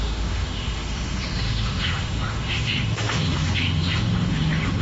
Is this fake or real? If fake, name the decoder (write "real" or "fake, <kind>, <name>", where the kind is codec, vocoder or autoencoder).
fake, autoencoder, DAC-VAE